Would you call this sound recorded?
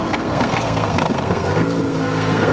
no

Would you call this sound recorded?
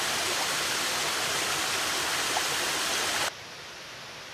yes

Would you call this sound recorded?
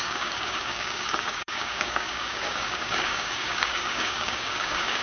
no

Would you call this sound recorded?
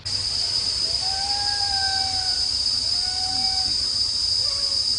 yes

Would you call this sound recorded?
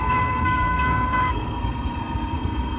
no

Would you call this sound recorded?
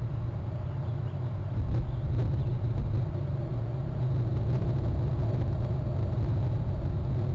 yes